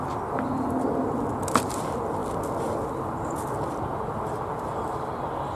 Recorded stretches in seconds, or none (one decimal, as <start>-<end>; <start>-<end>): 0.0-5.5